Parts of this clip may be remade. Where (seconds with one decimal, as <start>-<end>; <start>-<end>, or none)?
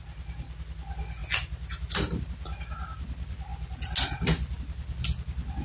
none